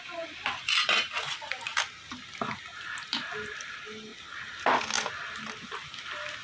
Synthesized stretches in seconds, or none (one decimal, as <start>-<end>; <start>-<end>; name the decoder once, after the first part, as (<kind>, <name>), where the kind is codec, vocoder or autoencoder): 0.0-1.7 (vocoder, BigVGAN v2); 3.1-4.1; 5.4-6.4